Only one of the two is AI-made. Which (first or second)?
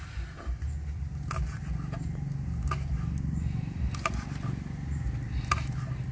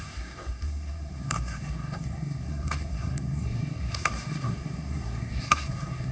second